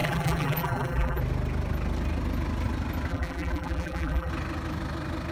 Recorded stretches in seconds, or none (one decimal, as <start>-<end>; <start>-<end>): 1.2-3.1; 4.3-5.3